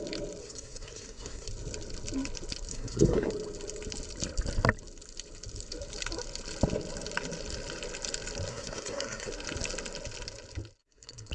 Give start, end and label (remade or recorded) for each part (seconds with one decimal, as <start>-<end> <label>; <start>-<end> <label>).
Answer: 0.0-0.4 recorded; 0.4-1.5 remade; 1.5-2.7 recorded; 2.7-3.3 remade; 3.3-8.5 recorded; 8.5-9.3 remade; 9.3-10.8 recorded; 10.8-11.3 remade